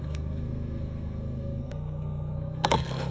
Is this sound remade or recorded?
remade